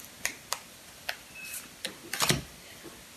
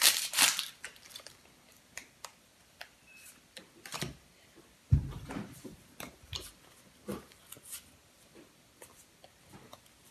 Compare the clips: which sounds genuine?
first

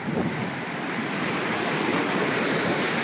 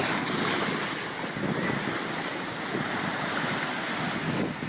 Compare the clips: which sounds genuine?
second